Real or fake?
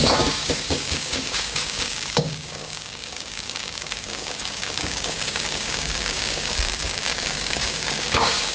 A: fake